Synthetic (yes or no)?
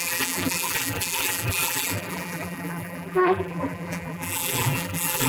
yes